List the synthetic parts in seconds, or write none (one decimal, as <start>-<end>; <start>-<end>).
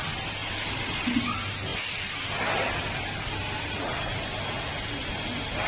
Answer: 0.4-1.0